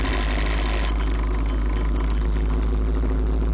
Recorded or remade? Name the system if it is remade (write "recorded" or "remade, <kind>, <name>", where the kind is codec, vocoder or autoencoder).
recorded